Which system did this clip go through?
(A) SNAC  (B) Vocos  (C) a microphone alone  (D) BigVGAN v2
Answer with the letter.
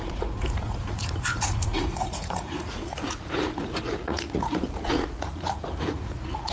B